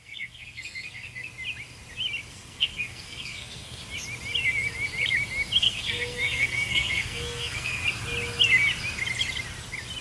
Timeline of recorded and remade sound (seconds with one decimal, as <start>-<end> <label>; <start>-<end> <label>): 0.0-1.3 remade; 1.3-2.3 recorded; 2.3-3.8 remade; 3.8-5.6 recorded; 5.6-7.8 remade; 7.8-10.0 recorded